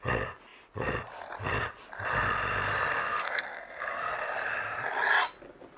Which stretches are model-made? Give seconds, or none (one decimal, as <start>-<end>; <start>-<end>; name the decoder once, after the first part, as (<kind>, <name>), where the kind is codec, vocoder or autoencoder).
3.0-4.1 (codec, SNAC)